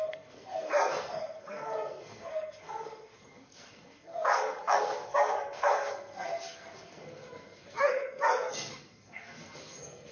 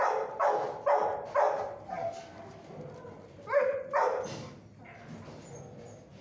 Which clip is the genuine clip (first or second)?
second